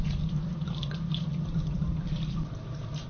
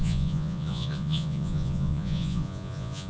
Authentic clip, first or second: first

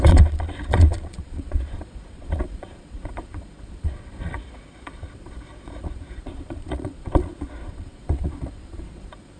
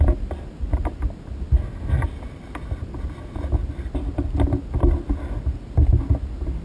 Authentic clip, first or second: second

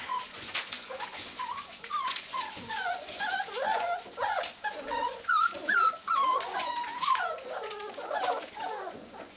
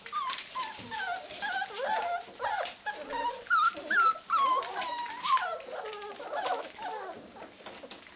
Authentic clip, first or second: second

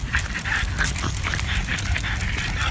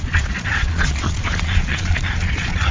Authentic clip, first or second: first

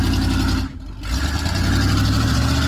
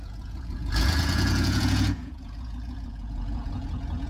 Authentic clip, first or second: first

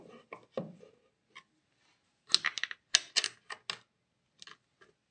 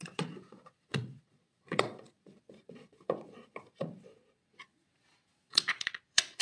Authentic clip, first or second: first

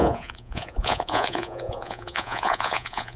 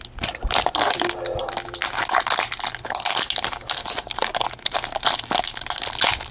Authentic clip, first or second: second